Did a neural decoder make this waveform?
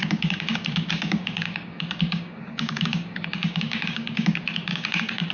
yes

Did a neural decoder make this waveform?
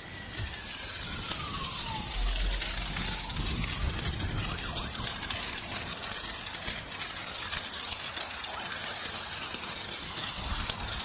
no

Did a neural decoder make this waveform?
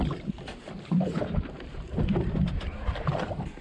yes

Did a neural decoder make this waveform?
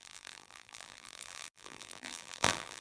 yes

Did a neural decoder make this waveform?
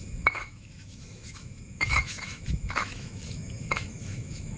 yes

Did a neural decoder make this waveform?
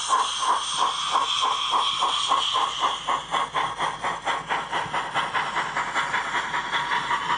no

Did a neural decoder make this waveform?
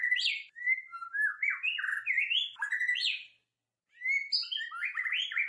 no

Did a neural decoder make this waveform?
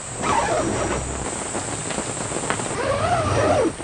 no